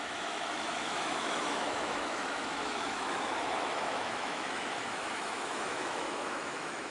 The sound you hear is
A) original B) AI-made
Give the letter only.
B